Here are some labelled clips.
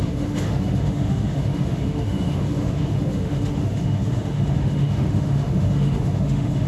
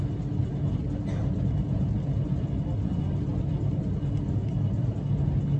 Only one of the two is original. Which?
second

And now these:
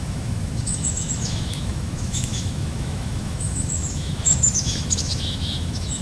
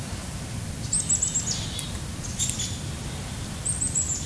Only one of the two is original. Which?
second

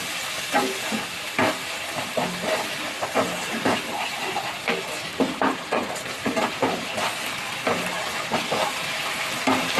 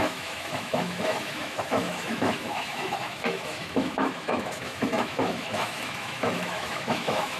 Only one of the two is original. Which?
first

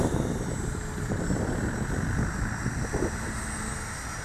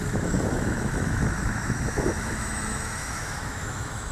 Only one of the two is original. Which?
first